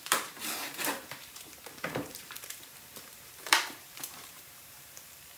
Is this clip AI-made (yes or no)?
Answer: yes